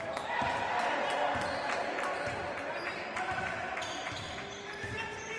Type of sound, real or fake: real